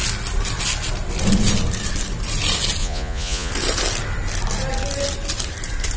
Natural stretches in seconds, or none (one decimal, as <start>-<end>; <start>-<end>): 0.0-2.8; 3.5-6.0

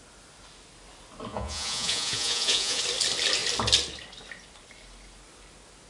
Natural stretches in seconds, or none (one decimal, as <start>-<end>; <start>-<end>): 0.0-1.3; 2.8-5.9

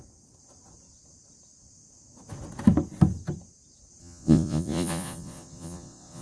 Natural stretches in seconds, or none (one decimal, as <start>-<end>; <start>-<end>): 0.0-4.0

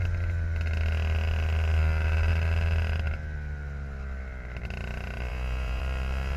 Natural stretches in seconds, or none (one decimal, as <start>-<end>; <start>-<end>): 0.0-5.3; 5.8-6.4

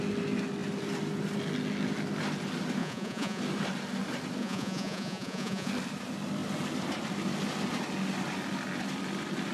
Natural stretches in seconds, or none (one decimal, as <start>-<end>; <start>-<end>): 0.0-2.8; 3.4-4.4; 5.7-9.5

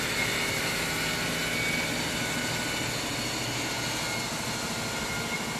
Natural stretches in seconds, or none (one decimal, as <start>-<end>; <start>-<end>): 0.0-5.6

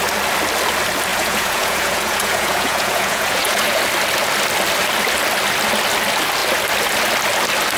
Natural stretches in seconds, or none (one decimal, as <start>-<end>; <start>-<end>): 0.0-1.1; 3.8-7.8